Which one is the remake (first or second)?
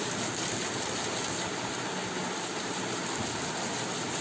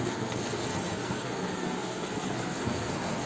second